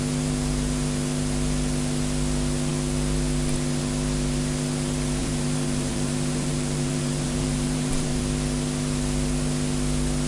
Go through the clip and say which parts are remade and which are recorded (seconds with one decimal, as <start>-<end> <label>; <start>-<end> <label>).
0.0-5.2 recorded; 5.2-8.2 remade; 8.2-10.3 recorded